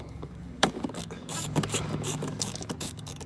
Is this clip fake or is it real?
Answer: fake